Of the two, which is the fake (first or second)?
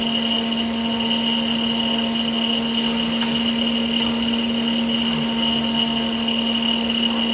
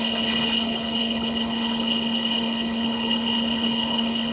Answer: second